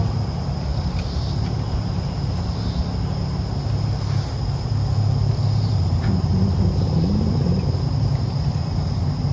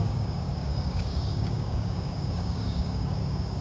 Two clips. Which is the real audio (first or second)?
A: first